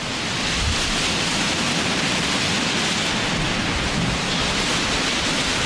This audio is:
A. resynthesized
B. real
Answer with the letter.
B